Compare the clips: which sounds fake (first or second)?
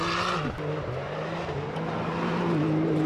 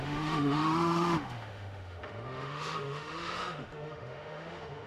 second